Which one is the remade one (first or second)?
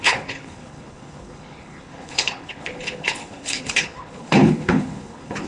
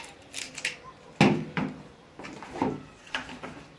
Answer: first